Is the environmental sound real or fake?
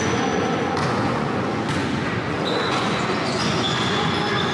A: fake